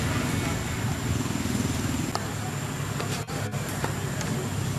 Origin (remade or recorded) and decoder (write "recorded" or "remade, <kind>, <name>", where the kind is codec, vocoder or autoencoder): recorded